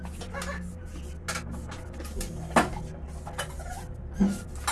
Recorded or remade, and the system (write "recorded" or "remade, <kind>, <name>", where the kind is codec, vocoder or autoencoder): recorded